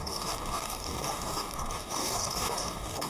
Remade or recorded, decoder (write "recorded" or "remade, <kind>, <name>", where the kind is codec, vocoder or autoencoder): remade, codec, DAC